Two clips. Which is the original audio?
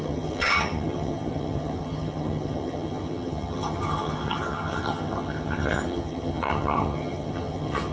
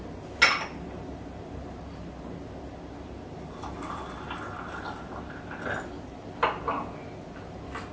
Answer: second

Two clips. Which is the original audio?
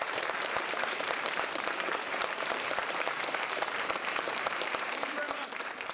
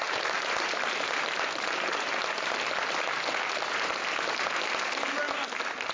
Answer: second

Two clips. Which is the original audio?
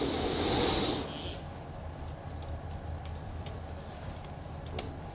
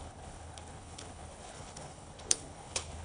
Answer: first